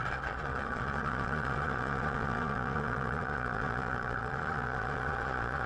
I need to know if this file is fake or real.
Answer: fake